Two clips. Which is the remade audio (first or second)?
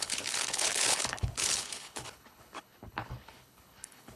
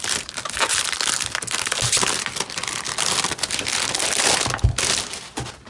first